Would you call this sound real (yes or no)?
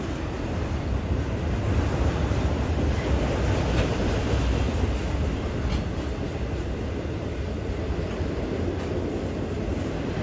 yes